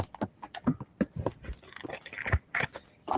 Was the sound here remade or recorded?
remade